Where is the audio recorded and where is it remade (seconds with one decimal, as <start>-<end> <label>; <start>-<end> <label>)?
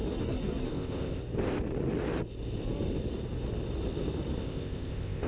0.0-0.7 recorded; 0.7-1.2 remade; 1.2-4.4 recorded; 4.4-5.3 remade